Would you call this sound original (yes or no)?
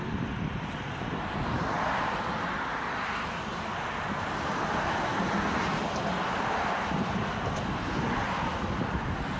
yes